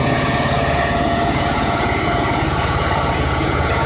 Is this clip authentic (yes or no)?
no